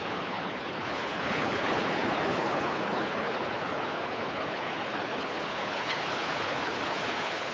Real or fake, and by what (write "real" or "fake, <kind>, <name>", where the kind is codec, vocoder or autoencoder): fake, codec, HILCodec